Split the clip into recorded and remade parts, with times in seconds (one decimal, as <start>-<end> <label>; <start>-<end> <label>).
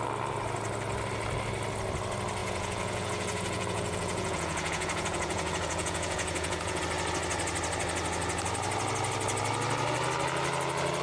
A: 0.0-2.4 recorded; 2.4-6.8 remade; 6.8-11.0 recorded